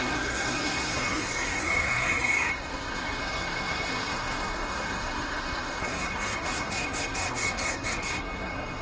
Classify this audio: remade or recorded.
remade